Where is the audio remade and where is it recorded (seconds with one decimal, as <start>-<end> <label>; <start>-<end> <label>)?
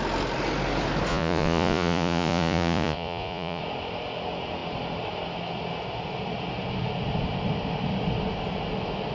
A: 0.0-1.1 recorded; 1.1-3.6 remade; 3.6-9.1 recorded